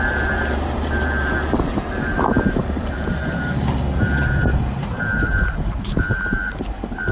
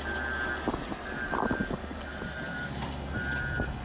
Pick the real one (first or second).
second